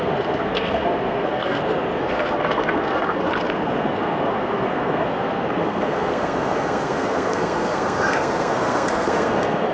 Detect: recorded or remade remade